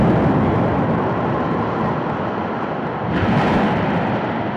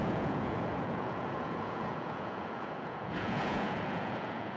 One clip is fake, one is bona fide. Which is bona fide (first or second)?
first